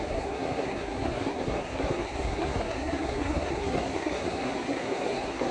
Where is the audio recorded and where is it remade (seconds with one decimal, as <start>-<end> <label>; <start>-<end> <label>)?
0.0-5.5 remade